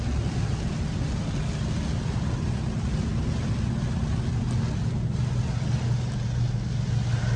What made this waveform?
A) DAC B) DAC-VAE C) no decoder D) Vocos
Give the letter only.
C